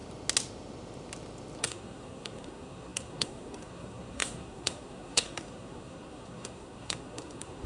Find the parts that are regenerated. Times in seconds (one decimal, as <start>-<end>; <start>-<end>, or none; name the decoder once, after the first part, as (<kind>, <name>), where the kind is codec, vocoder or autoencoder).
1.6-7.7 (codec, SNAC)